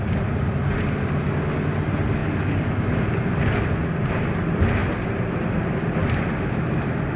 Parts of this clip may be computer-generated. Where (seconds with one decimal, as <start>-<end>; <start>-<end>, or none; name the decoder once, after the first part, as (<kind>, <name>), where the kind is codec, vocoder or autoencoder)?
none